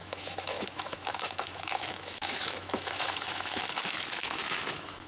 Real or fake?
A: fake